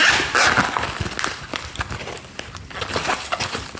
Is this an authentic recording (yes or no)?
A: yes